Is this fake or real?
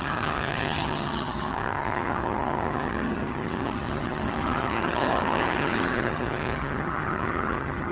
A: fake